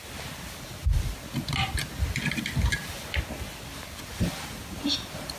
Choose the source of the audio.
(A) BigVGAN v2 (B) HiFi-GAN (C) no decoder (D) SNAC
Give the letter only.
C